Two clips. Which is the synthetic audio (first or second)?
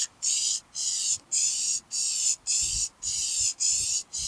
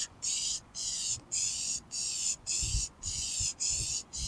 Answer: second